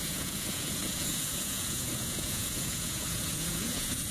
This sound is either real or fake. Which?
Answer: fake